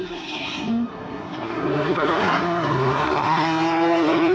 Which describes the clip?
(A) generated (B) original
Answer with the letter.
A